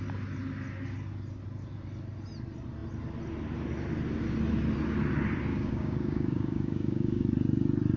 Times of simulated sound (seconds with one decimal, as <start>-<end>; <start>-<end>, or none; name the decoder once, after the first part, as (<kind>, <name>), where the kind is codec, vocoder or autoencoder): 5.5-7.2 (codec, DAC)